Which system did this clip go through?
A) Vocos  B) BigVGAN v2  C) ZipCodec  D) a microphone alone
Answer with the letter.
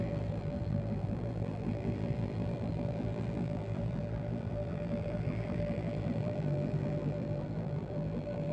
B